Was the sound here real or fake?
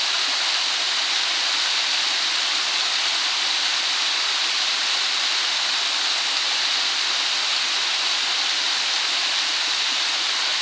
real